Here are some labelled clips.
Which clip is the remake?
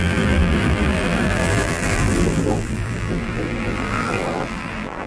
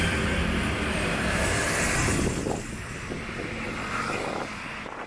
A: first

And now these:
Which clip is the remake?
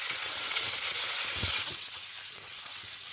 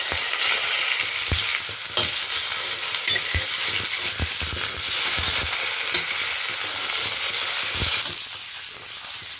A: first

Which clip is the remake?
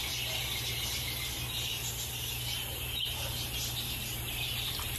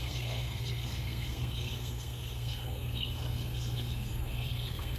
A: second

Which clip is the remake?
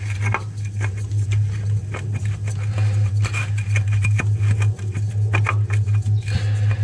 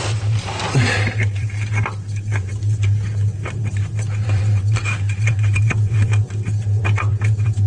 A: second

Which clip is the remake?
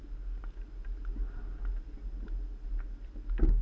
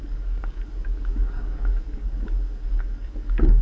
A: second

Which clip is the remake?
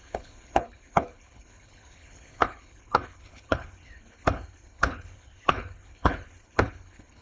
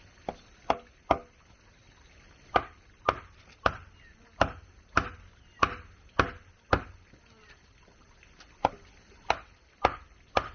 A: first